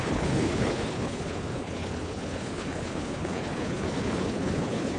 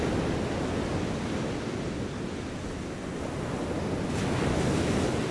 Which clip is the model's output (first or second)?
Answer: first